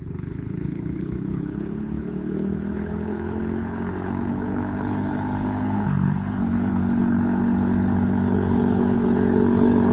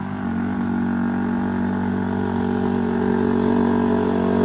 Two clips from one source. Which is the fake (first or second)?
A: first